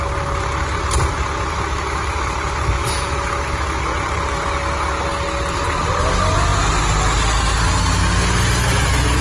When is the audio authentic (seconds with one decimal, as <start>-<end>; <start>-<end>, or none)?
0.0-1.5; 3.8-9.2